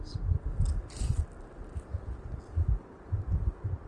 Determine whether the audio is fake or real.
real